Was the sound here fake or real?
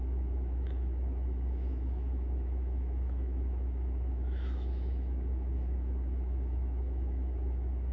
fake